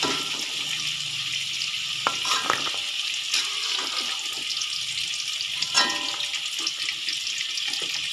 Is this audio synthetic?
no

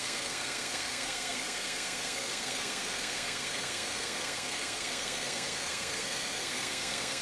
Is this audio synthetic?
yes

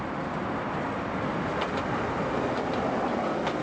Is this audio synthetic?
no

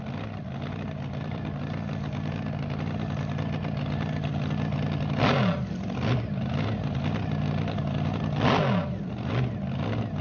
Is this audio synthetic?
no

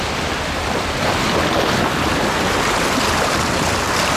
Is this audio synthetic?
no